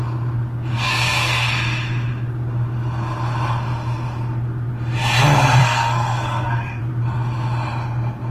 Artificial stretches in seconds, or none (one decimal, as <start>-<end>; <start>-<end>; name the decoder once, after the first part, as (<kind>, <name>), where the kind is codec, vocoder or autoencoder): 0.7-1.5 (codec, SNAC); 5.6-6.8